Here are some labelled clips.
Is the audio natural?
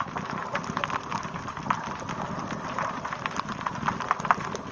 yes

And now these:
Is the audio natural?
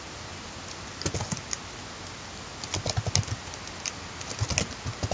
yes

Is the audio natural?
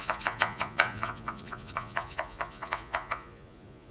no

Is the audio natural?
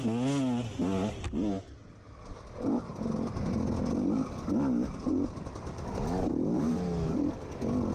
yes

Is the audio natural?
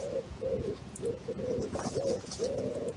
no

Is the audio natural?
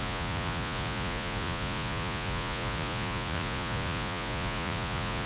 no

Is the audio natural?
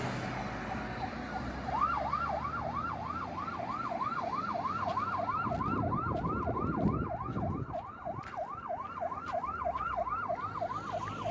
yes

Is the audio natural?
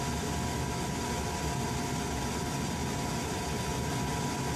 yes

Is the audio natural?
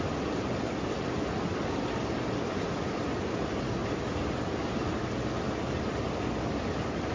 yes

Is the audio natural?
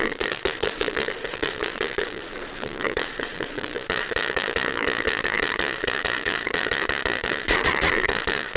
no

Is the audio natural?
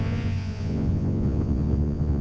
no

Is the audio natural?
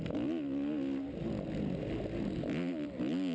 yes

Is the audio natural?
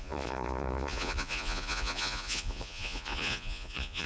no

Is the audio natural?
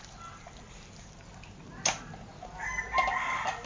yes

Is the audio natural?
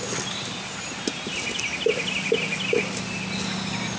yes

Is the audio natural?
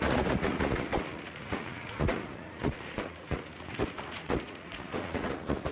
no